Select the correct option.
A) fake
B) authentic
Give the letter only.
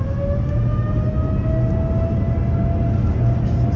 B